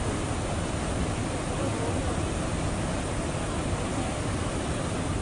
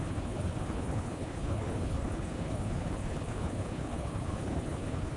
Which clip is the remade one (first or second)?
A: second